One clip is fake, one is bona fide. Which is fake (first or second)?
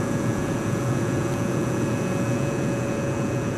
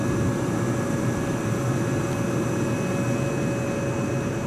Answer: first